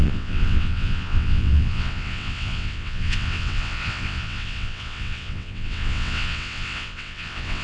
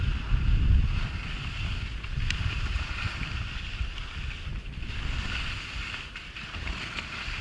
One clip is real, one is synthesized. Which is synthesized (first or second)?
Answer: first